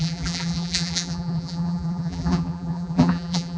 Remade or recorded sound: remade